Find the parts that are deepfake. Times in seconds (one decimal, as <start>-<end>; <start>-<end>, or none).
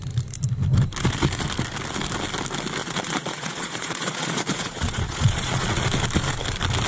2.8-5.8